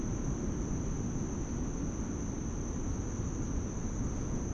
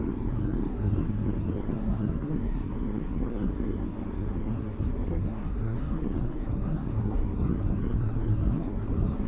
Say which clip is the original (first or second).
first